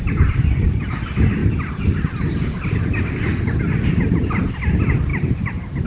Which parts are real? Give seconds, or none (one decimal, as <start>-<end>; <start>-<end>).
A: none